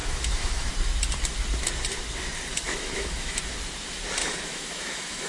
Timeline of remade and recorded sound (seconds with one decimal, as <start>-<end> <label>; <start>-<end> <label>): 0.0-0.7 remade; 0.7-2.5 recorded; 2.5-3.4 remade; 3.4-4.2 recorded; 4.2-5.3 remade